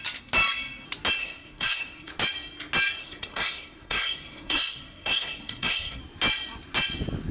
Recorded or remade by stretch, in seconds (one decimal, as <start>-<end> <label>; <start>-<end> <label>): 0.0-1.2 recorded; 1.2-2.1 remade; 2.1-3.0 recorded; 3.0-6.0 remade; 6.0-7.3 recorded